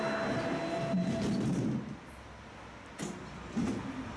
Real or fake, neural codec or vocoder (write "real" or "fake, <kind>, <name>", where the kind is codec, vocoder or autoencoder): real